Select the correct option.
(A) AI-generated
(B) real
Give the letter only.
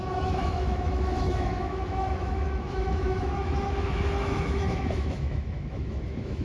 A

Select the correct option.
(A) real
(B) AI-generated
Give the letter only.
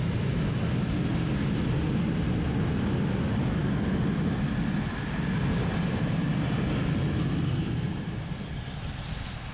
A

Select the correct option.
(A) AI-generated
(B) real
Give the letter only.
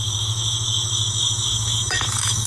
A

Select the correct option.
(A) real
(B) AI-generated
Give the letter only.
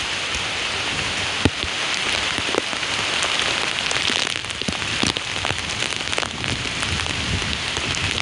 A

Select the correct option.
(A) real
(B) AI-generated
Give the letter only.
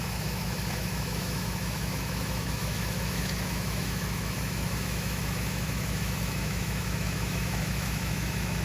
B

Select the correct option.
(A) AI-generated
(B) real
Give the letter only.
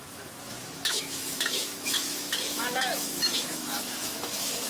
A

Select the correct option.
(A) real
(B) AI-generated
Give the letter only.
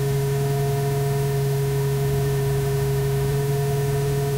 B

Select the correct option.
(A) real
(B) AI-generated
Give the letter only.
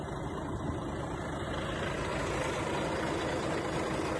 A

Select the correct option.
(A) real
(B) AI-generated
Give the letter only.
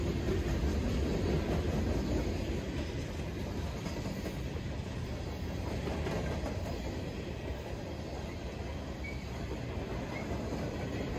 A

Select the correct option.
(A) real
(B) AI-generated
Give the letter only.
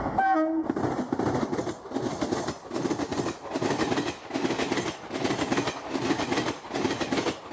A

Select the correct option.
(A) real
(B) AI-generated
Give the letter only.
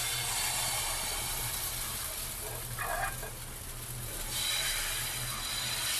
A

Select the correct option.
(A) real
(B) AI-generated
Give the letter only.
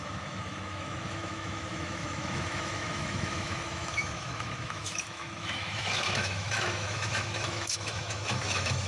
B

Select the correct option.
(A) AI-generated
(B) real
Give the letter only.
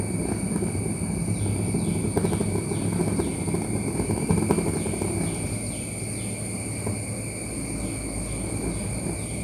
B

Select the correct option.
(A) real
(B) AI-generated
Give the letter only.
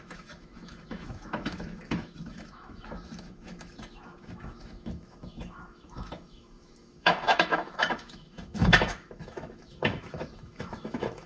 B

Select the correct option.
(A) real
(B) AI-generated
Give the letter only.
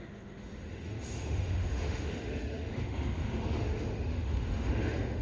B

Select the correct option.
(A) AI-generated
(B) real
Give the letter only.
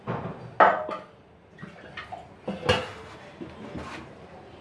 B